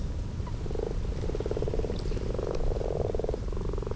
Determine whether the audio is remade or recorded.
recorded